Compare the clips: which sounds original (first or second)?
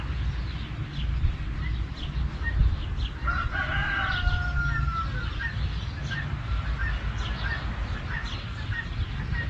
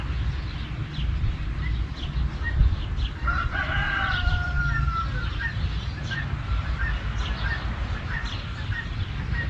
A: first